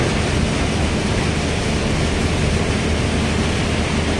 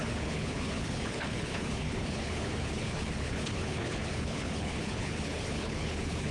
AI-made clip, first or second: second